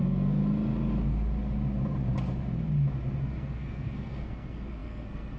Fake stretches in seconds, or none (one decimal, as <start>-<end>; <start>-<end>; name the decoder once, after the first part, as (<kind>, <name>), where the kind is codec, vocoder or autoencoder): 0.0-0.4 (codec, SNAC); 3.2-5.4